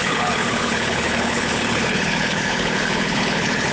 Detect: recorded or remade remade